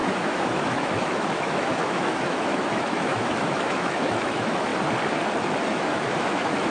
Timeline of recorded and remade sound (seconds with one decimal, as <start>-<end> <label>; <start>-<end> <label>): 0.0-4.7 remade; 4.7-5.7 recorded; 5.7-6.7 remade